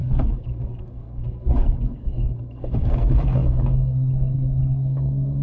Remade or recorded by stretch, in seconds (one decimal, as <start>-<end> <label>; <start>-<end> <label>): 0.0-5.4 remade